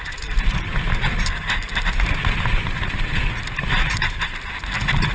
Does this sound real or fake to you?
real